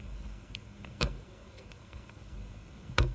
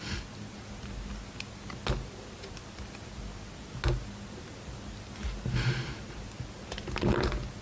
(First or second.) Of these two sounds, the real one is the second